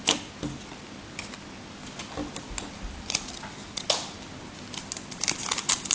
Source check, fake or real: real